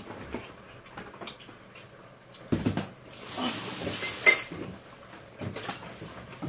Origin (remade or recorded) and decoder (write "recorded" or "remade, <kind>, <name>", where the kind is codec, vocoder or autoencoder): recorded